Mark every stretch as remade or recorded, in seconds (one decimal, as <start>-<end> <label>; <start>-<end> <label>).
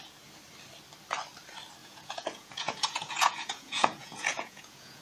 0.0-1.8 recorded; 1.8-5.0 remade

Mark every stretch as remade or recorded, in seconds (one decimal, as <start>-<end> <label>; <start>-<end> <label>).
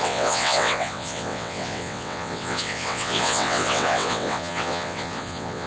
0.0-5.7 remade